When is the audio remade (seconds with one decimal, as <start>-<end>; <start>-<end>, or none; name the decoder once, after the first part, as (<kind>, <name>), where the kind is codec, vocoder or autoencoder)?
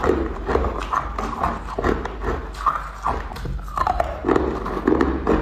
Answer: 0.0-0.8 (vocoder, BigVGAN v2); 1.5-2.4; 3.3-4.2